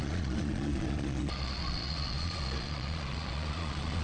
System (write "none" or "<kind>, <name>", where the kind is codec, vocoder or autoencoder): vocoder, Vocos